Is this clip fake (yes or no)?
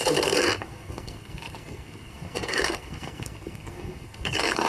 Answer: yes